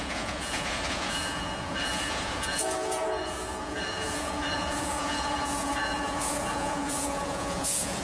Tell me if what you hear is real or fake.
fake